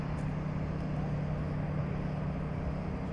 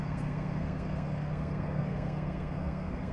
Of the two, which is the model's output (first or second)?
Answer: second